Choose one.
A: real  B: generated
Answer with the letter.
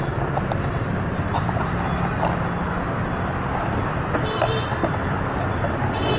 A